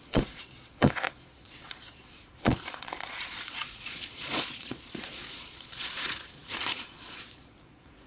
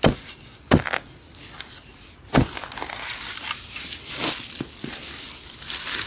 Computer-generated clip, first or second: first